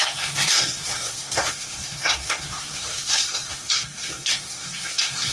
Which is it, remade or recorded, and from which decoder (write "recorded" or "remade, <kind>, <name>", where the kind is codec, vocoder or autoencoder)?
remade, codec, SNAC